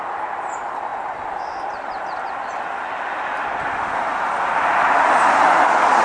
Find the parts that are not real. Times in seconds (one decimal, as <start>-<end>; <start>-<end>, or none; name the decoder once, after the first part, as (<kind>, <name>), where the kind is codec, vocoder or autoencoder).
none